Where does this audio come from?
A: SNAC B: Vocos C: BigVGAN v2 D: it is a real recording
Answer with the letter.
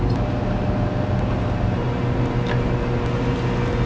D